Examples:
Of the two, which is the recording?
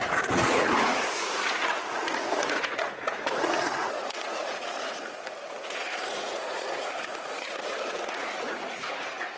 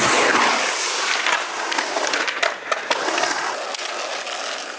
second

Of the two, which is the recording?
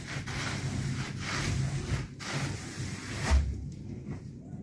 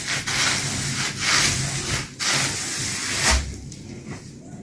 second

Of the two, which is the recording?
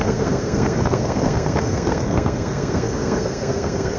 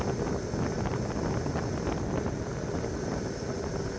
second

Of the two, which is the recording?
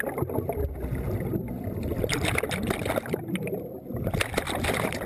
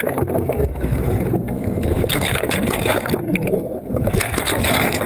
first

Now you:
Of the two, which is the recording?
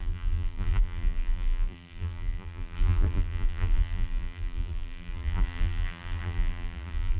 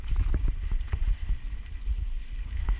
second